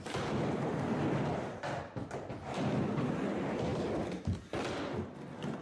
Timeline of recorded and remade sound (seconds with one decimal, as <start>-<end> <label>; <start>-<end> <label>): 0.0-2.9 remade; 2.9-3.7 recorded; 3.7-4.4 remade; 4.4-5.6 recorded